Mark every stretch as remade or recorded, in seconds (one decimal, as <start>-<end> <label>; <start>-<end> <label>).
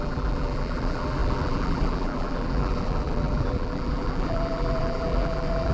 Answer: 0.0-5.7 remade